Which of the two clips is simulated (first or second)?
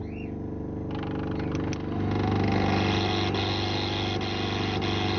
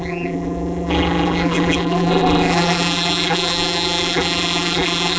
second